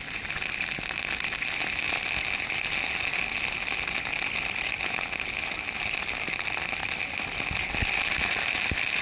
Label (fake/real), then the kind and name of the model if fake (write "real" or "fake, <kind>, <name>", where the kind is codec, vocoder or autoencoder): real